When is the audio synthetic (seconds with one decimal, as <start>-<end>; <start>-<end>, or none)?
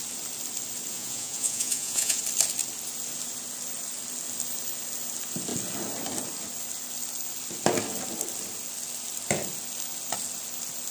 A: 0.9-2.2